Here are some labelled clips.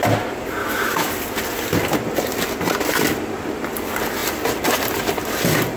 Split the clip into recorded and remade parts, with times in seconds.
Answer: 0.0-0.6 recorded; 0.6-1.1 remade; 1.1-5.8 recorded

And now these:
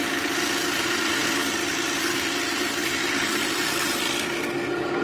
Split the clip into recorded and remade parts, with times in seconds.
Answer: 0.0-5.0 recorded

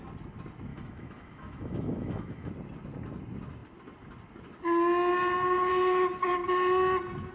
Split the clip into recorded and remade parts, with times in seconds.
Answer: 0.0-0.7 recorded; 0.7-2.5 remade; 2.5-7.3 recorded

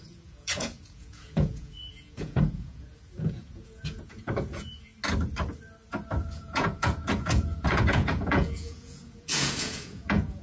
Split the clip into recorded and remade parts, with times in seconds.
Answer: 0.0-4.9 remade; 4.9-6.3 recorded; 6.3-10.4 remade

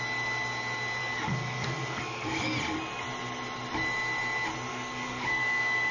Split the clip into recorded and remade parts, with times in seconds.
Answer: 0.0-1.0 recorded; 1.0-2.5 remade; 2.5-4.7 recorded; 4.7-5.9 remade